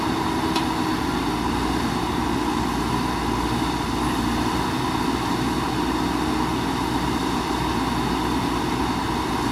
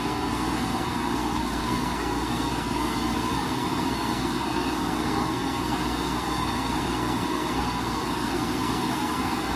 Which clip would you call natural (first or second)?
first